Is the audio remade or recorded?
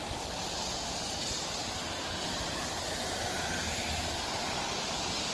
recorded